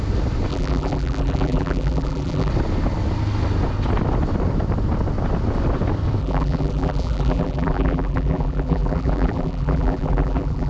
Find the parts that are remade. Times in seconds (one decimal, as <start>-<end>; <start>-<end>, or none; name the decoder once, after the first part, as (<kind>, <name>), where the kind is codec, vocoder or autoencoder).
0.5-2.5 (vocoder, BigVGAN v2); 6.2-10.7